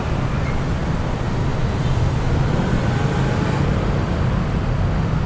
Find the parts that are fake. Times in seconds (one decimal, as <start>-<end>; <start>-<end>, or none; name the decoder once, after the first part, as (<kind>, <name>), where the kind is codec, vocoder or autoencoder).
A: none